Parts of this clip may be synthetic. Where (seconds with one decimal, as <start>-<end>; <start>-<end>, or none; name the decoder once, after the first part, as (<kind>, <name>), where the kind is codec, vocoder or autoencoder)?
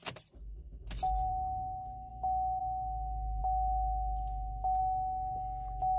none